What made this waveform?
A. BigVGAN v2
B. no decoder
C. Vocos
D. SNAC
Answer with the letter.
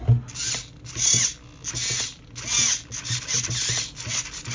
B